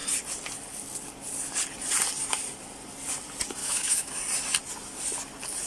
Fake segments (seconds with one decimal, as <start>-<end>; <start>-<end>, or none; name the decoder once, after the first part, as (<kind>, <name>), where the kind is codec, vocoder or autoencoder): 3.6-4.2 (autoencoder, DAC-VAE)